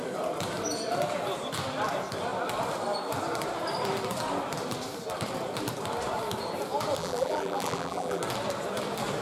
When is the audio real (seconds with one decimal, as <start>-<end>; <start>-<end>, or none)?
0.0-7.0; 8.2-9.2